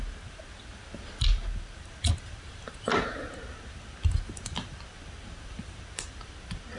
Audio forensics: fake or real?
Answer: real